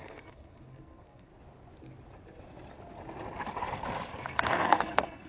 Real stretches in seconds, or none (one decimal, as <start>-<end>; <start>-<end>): 1.3-4.5